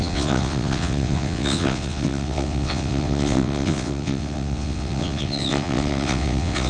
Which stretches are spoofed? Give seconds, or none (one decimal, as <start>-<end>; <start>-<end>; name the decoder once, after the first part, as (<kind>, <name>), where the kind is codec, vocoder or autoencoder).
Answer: 0.0-6.7 (vocoder, WaveNeXt)